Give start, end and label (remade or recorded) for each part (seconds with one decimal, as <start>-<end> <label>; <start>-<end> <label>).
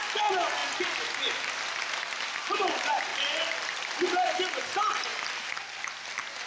0.0-3.1 recorded; 3.1-4.3 remade; 4.3-6.5 recorded